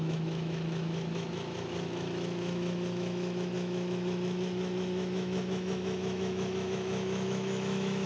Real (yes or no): no